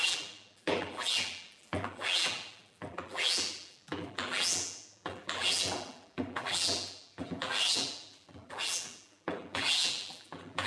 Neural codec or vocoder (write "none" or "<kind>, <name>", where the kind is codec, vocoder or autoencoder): vocoder, BigVGAN v2